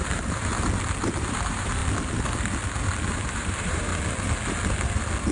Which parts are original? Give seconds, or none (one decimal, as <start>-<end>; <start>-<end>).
0.5-1.2; 1.8-3.1; 3.9-5.3